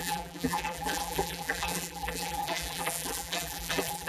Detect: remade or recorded remade